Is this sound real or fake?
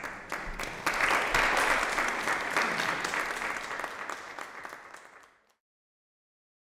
real